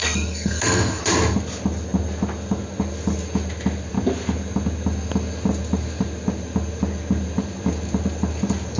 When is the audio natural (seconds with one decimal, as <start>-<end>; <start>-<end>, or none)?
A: 1.0-8.8